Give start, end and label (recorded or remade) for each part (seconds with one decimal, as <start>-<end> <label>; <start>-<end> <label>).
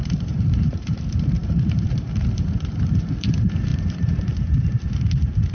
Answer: 0.0-5.5 remade